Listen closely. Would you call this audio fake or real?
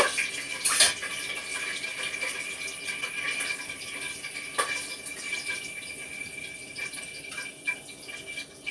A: real